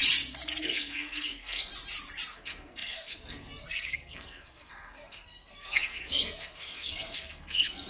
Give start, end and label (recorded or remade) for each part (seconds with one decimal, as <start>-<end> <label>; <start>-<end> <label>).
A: 0.0-0.6 recorded; 0.6-1.7 remade; 1.7-2.3 recorded; 2.3-7.9 remade